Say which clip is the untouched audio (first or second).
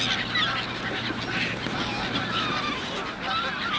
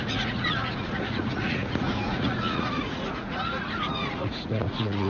first